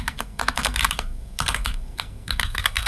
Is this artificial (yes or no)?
yes